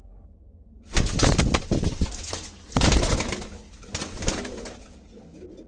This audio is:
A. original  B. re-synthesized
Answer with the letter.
A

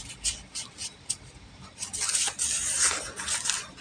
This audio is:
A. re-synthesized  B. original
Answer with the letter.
B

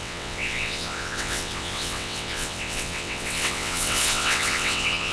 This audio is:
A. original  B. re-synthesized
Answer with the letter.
B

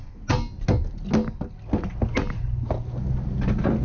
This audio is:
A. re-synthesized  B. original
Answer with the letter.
B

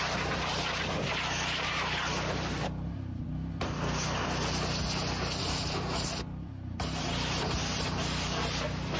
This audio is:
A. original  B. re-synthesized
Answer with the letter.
A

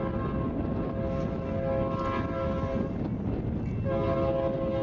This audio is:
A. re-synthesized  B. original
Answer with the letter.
B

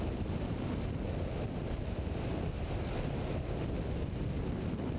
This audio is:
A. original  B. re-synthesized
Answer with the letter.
A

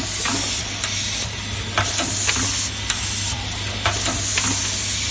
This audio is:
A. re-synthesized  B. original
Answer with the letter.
B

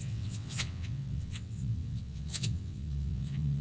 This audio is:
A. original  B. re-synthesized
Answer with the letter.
B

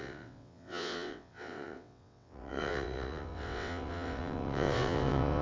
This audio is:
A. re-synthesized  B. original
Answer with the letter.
A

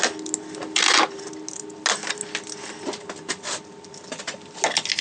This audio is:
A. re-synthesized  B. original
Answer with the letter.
B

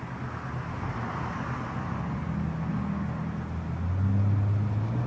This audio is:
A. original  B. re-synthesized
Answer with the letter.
A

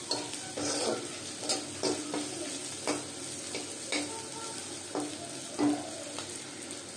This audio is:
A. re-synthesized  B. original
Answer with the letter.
B